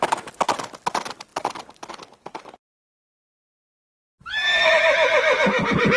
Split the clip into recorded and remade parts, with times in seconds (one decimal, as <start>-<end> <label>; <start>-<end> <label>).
0.0-6.0 recorded